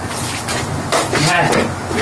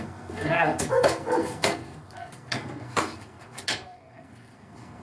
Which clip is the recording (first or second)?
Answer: first